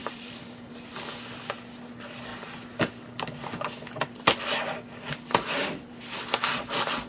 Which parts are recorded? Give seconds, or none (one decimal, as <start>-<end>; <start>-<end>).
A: 0.7-7.1

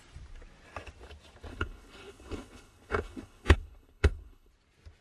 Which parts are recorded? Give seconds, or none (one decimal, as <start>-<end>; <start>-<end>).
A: 0.0-1.5; 4.5-5.0

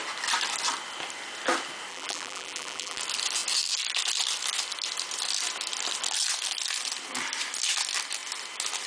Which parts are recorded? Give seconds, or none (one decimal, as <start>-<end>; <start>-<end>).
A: 0.0-1.9; 3.0-8.9

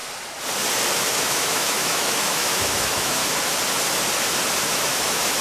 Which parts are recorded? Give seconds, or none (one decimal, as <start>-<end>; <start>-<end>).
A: 0.0-1.1; 3.2-4.7

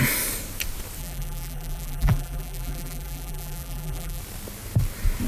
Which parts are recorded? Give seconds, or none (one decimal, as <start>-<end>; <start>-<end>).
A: 0.0-1.0; 4.2-5.3

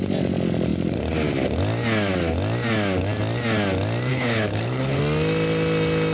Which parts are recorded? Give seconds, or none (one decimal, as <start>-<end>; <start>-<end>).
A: 0.0-4.1; 5.0-6.1

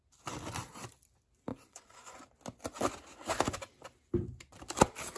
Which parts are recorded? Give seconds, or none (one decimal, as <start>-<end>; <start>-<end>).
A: 0.0-1.5; 2.2-5.2

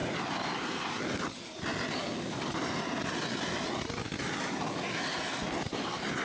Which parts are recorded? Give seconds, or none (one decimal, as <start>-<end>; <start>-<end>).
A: 0.0-6.2